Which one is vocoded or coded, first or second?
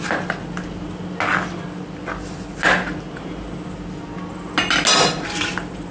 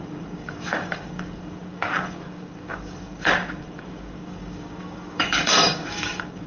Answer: second